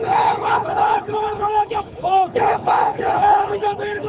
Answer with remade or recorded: remade